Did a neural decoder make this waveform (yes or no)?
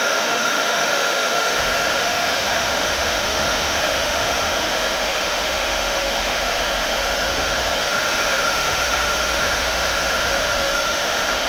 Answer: yes